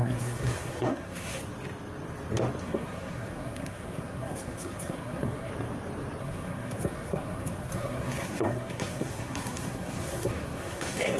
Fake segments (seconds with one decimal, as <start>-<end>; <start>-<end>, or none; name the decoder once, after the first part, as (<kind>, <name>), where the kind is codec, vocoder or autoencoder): 0.0-1.4 (codec, SNAC); 2.6-5.5; 6.2-11.2